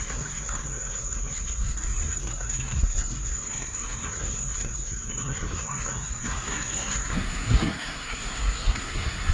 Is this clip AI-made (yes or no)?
yes